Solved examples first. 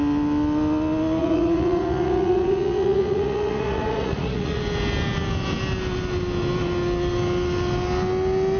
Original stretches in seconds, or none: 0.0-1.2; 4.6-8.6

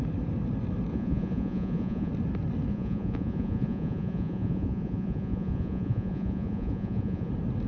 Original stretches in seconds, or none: 0.0-0.9; 2.1-2.7; 7.3-7.7

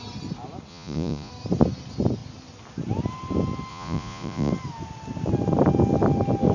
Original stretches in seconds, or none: 0.0-0.7; 1.3-3.7; 4.5-6.5